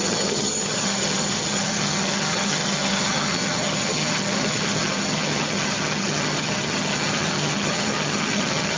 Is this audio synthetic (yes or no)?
yes